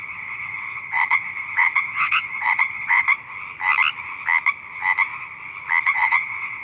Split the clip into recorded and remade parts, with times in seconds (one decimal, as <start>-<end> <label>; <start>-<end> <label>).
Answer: 0.0-3.1 remade; 3.1-5.8 recorded; 5.8-6.6 remade